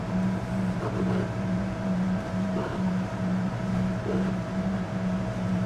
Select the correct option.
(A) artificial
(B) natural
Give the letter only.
A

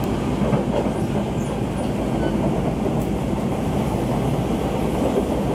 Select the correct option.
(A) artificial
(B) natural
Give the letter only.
B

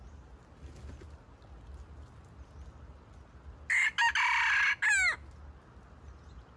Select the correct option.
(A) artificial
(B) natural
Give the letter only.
B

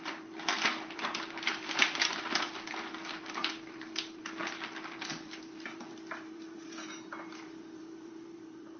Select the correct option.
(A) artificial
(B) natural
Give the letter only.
A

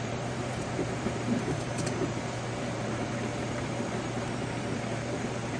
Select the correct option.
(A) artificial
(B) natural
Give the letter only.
A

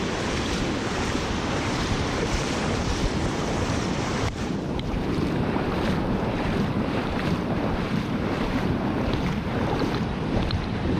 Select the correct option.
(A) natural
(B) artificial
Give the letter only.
B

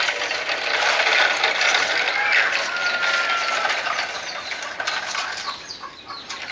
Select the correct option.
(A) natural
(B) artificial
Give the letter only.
A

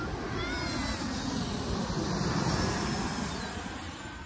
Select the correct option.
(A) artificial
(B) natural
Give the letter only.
B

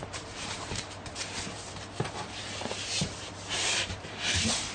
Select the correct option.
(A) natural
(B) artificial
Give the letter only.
B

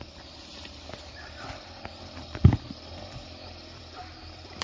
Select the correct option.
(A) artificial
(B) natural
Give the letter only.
A